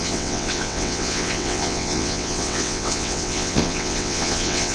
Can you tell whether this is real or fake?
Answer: fake